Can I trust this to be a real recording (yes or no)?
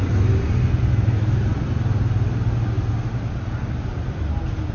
yes